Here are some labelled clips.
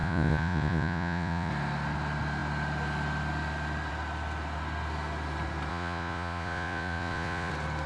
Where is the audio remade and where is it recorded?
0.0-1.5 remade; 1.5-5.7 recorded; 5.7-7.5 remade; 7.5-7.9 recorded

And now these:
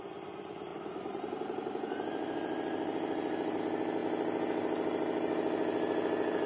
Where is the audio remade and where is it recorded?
0.0-0.7 recorded; 0.7-3.6 remade; 3.6-6.5 recorded

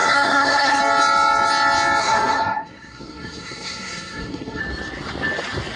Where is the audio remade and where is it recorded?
0.0-0.8 remade; 0.8-2.0 recorded; 2.0-4.6 remade; 4.6-5.8 recorded

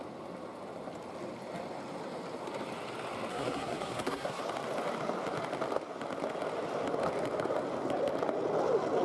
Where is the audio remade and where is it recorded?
0.0-3.3 recorded; 3.3-4.4 remade; 4.4-9.0 recorded

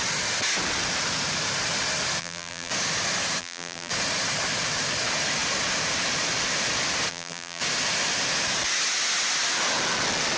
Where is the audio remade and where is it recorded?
0.0-2.2 recorded; 2.2-2.7 remade; 2.7-3.4 recorded; 3.4-3.9 remade; 3.9-7.1 recorded; 7.1-7.6 remade; 7.6-10.4 recorded

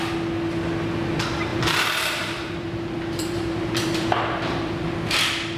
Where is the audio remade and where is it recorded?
0.0-1.5 recorded; 1.5-4.9 remade; 4.9-5.6 recorded

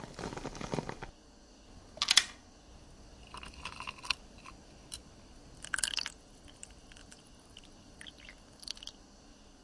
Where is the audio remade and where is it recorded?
0.0-9.6 recorded